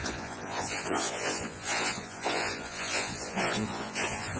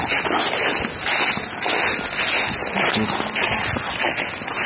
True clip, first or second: second